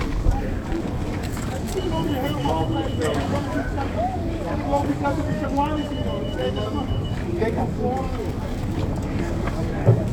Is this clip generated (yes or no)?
yes